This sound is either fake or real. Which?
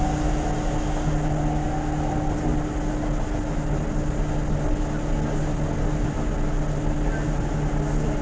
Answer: real